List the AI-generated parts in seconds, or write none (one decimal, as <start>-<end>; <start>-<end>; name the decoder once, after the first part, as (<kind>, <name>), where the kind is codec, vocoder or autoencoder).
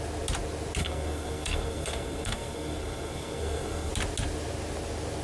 0.8-3.9 (codec, SNAC)